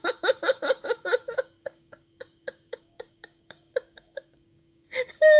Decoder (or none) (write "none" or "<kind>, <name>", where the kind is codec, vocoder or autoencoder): codec, DAC